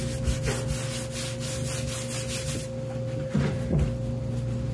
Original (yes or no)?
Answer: yes